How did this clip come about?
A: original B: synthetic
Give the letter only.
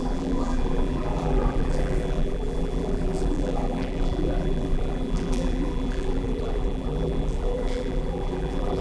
B